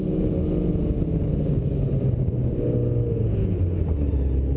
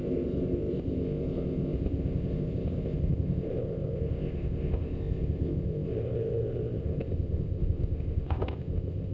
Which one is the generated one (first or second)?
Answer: second